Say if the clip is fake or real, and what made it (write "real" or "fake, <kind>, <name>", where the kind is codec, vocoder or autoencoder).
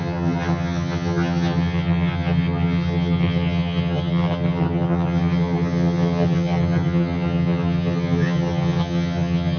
fake, vocoder, HiFi-GAN